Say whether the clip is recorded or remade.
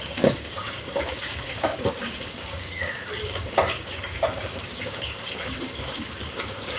remade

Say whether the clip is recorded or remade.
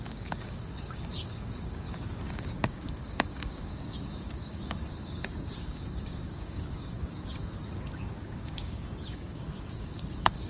remade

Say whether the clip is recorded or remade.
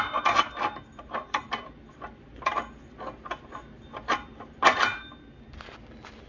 recorded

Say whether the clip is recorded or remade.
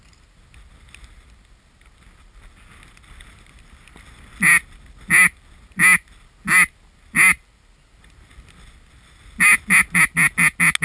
recorded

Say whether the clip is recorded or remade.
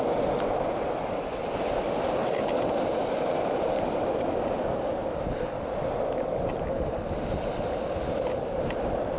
recorded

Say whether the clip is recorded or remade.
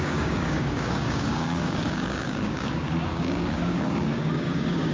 remade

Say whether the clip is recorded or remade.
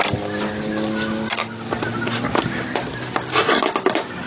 recorded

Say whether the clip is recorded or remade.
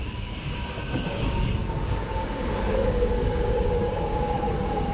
remade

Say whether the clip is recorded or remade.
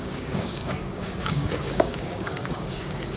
remade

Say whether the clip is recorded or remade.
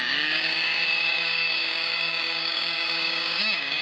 remade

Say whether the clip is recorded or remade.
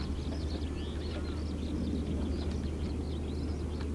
recorded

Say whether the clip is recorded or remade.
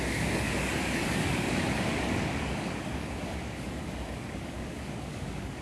remade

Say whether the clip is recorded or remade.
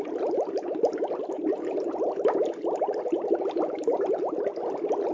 recorded